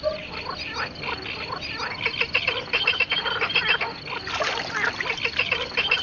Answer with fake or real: real